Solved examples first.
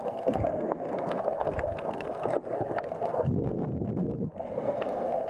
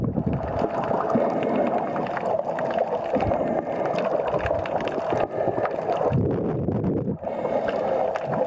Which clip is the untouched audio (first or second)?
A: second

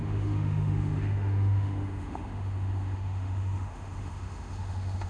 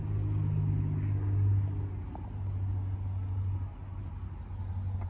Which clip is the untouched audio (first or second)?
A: second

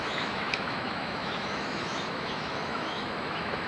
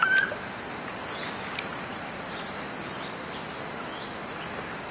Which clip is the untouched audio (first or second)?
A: second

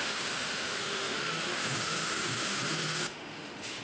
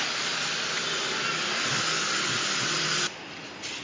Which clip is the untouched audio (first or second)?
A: second